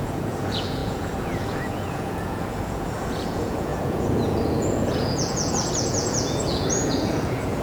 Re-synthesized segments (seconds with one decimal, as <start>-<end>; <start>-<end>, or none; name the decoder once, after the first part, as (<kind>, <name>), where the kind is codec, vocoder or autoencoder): 0.0-7.6 (vocoder, Vocos)

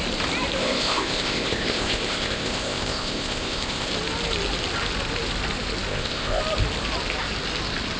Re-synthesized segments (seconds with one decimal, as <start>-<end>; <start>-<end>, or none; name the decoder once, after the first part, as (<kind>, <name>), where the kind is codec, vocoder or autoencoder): 0.6-3.9 (codec, ZipCodec); 5.9-6.4

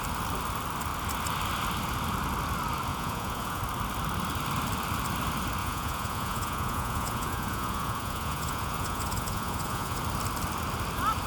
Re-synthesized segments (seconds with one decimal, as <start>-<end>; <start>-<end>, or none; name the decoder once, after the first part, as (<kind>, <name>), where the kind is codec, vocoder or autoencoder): 2.9-3.6 (vocoder, Vocos); 5.6-10.0

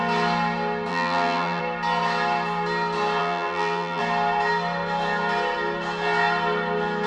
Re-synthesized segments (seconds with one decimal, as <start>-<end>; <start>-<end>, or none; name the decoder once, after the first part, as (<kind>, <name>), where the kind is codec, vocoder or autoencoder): 0.9-1.6 (vocoder, BigVGAN v2); 3.2-4.0

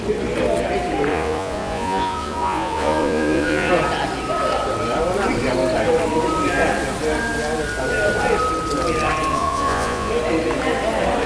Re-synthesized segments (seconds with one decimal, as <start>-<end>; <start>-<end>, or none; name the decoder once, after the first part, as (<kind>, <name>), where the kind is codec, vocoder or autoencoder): 1.1-3.7 (vocoder, Vocos); 9.3-10.1